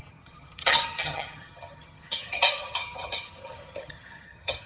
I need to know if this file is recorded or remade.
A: remade